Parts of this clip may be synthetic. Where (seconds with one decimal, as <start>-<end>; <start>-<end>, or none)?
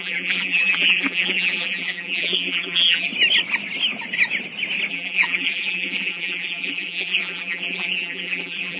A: 0.0-3.1; 4.9-8.8